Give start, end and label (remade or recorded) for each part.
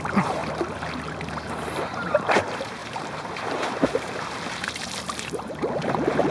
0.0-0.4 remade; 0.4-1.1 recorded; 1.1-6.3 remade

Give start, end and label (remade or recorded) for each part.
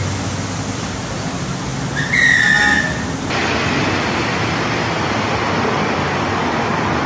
0.0-7.1 recorded